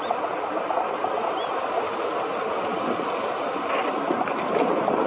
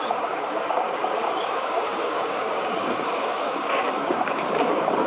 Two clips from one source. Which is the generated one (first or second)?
second